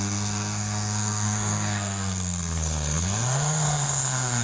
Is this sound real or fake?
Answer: fake